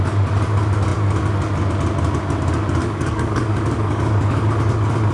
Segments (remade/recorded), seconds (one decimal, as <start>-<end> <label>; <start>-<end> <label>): 0.0-2.8 recorded; 2.8-4.5 remade; 4.5-5.1 recorded